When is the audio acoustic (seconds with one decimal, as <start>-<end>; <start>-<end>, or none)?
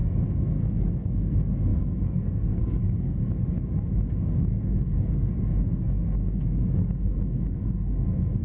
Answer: 3.2-4.2